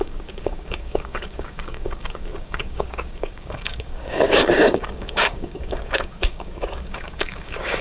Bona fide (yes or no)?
no